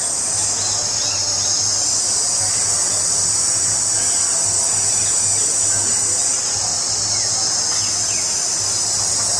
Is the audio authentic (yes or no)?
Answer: yes